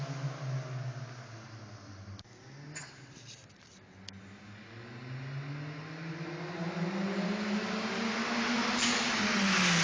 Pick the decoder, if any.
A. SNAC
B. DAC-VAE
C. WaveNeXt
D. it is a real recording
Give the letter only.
D